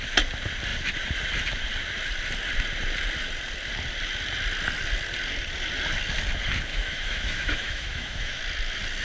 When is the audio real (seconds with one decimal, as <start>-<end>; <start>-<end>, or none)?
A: 0.0-6.7; 8.4-9.0